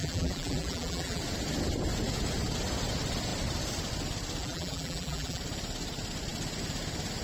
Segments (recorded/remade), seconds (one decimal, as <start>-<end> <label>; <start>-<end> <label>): 0.0-1.2 remade; 1.2-4.4 recorded; 4.4-5.4 remade; 5.4-7.2 recorded